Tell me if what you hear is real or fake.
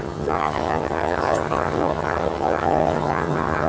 fake